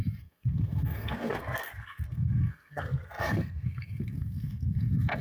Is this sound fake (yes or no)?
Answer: yes